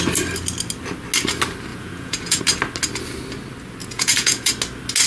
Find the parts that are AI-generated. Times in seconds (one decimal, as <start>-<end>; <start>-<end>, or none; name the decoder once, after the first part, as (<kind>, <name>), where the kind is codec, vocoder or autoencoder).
1.7-2.4 (vocoder, Vocos); 3.8-4.5

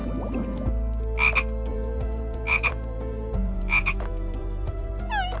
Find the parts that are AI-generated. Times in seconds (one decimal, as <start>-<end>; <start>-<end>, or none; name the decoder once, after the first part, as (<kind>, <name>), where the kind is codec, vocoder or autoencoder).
1.7-4.9 (vocoder, Vocos)

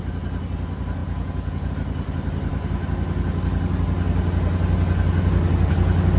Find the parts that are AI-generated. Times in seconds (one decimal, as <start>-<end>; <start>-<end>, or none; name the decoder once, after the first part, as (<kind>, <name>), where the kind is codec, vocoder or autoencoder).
1.0-1.7 (vocoder, Vocos)

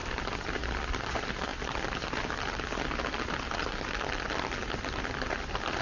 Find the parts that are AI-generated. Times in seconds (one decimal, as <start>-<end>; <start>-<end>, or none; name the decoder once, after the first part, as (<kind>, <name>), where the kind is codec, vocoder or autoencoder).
none

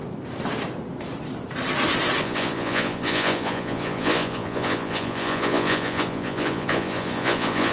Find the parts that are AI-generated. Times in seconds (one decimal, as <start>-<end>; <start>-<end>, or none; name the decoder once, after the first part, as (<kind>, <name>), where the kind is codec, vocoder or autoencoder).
2.2-7.7 (vocoder, Vocos)